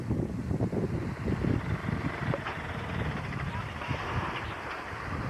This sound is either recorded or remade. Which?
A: recorded